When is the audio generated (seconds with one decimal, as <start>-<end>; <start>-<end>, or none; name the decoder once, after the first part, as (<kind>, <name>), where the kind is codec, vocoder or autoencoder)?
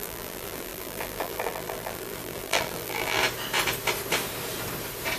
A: 0.0-3.2 (vocoder, BigVGAN v2)